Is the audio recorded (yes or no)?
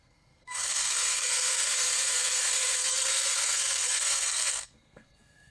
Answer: no